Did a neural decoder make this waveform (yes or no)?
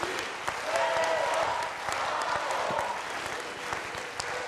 no